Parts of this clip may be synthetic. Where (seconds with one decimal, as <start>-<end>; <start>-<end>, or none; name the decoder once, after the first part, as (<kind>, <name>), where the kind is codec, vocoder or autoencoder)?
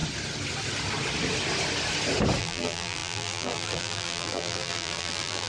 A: 2.4-5.5 (vocoder, BigVGAN v2)